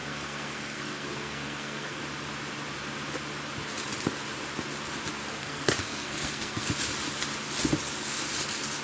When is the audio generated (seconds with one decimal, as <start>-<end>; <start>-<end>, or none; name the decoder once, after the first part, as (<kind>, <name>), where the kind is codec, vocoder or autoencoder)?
0.0-2.0 (codec, SNAC); 5.4-6.7